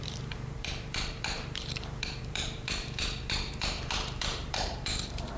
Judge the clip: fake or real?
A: fake